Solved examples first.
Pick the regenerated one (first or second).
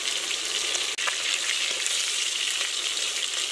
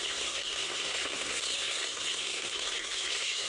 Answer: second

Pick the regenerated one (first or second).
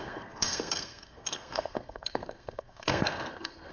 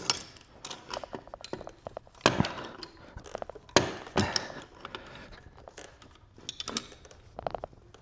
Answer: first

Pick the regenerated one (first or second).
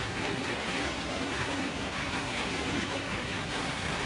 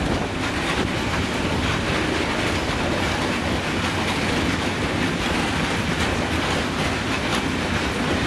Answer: first